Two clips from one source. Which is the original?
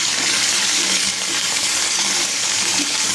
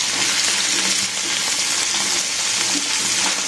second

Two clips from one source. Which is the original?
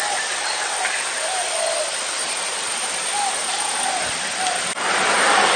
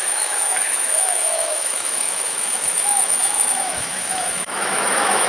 first